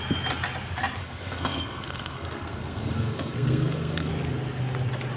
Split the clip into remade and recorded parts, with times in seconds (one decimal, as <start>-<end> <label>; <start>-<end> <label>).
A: 0.0-1.0 recorded; 1.0-4.1 remade; 4.1-5.2 recorded